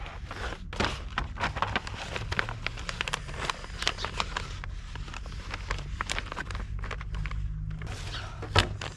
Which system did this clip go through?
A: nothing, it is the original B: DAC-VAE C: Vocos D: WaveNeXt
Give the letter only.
A